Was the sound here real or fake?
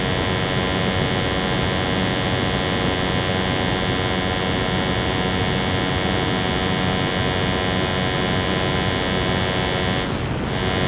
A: real